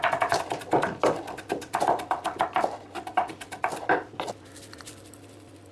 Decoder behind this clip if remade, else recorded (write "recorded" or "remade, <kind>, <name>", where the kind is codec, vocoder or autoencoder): recorded